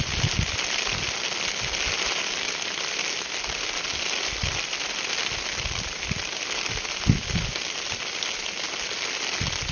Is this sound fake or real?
real